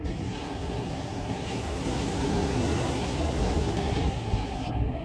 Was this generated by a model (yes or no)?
yes